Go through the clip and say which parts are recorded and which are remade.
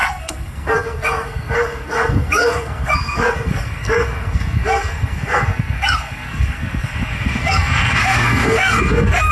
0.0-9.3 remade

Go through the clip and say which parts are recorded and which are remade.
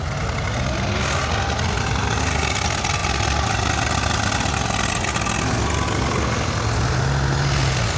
0.0-8.0 recorded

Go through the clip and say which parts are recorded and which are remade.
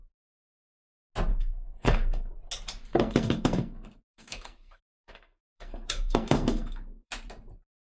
0.0-1.3 recorded; 1.3-2.3 remade; 2.3-2.9 recorded; 2.9-7.1 remade; 7.1-7.9 recorded